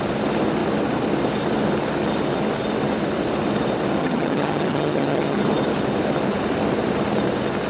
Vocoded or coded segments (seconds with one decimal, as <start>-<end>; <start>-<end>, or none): 4.0-5.4